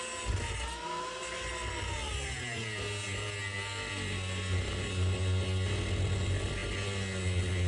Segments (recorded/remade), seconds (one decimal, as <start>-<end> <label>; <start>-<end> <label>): 0.0-7.7 recorded